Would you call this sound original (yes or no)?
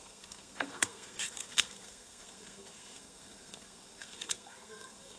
no